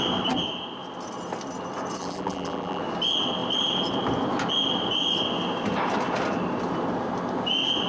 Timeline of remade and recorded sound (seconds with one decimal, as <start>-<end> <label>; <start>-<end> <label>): 0.0-2.0 recorded; 2.0-2.8 remade; 2.8-7.9 recorded